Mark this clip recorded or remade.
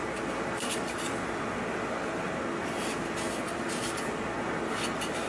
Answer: recorded